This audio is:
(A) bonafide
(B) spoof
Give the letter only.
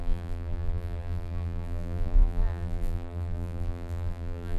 B